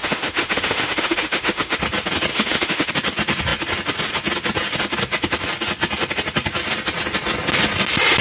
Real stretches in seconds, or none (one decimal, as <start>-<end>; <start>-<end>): 1.8-2.3; 2.9-8.2